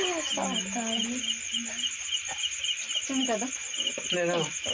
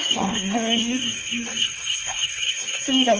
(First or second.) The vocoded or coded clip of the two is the second